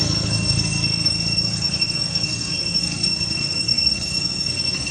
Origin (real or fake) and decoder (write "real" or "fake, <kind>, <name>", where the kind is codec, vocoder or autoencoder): fake, codec, SNAC